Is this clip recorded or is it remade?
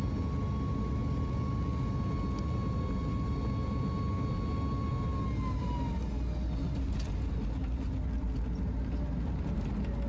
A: recorded